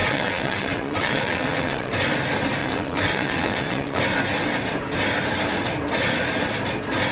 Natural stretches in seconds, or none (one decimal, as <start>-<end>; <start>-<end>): 1.9-2.6; 4.0-7.1